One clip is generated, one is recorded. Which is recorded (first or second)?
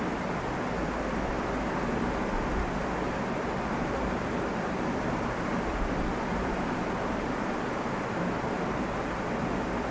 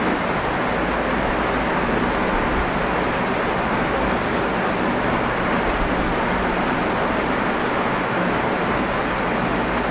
second